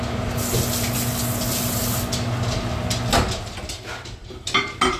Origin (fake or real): real